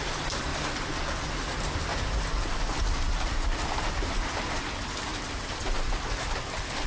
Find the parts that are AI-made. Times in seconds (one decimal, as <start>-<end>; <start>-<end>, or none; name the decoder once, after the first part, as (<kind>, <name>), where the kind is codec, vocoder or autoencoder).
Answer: 0.0-5.1 (vocoder, BigVGAN v2); 6.2-6.9